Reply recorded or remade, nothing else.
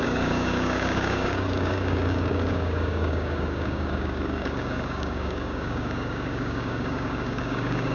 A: remade